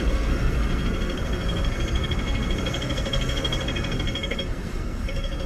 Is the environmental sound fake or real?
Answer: fake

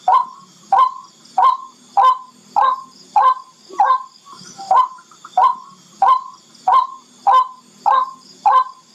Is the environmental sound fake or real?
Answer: real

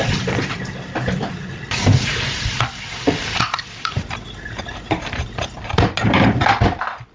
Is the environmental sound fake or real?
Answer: real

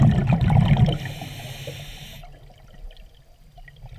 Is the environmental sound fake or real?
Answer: real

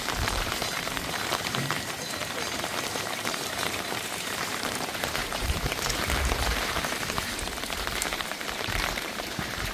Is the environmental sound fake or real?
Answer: fake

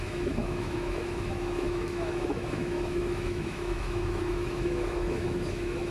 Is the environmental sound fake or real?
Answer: fake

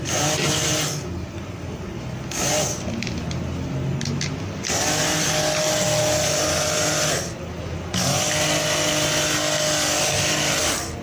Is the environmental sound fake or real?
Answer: real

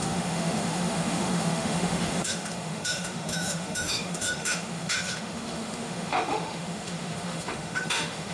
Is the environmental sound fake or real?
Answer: fake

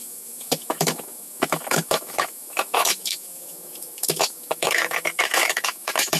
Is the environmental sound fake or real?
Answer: fake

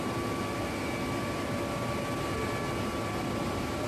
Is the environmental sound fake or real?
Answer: real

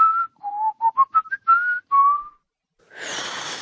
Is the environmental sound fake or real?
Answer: real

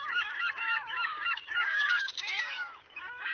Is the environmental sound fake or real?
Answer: fake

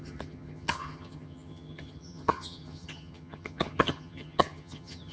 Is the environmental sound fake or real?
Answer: fake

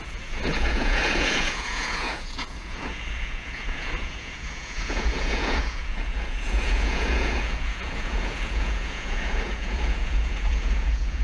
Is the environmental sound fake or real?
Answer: fake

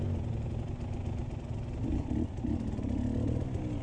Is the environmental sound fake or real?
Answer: real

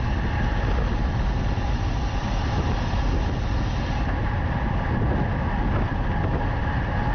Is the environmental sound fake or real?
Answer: real